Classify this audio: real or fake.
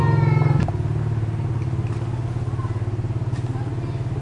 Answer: real